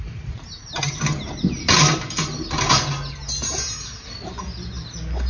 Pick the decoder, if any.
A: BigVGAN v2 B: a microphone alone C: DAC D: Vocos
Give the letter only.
B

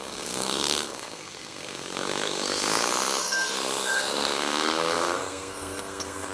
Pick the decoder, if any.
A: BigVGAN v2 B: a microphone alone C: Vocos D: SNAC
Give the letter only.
D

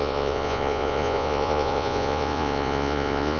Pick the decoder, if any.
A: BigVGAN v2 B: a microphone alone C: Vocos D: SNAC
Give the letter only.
C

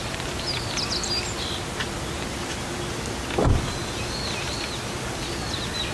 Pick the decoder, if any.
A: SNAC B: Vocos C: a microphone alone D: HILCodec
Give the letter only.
C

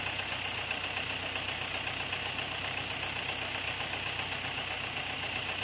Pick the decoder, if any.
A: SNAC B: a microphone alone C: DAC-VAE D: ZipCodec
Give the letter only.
B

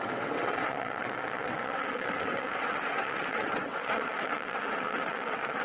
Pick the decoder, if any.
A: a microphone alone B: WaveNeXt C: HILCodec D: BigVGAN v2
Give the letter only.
B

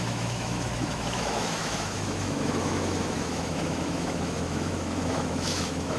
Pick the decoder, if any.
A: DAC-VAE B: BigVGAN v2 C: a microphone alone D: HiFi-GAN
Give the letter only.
A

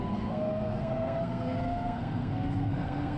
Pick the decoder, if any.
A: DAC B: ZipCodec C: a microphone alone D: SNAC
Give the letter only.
D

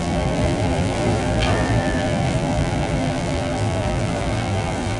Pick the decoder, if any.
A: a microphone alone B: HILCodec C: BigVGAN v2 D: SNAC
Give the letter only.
C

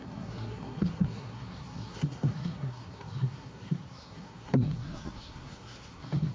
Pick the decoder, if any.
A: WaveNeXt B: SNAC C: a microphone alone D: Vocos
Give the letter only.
B